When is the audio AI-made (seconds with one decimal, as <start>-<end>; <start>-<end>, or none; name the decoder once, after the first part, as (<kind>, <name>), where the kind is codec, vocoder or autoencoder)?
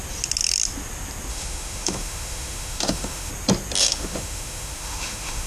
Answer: 1.3-3.3 (autoencoder, DAC-VAE); 3.8-5.5